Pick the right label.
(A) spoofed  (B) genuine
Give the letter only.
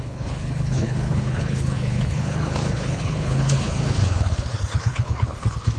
A